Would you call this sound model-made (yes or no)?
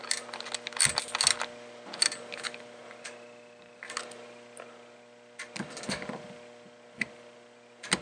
no